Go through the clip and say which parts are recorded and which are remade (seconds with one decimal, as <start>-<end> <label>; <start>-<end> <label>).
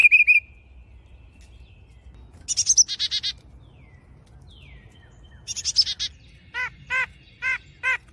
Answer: 0.0-8.1 recorded